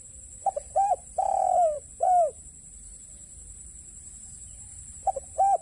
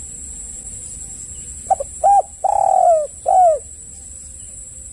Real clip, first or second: second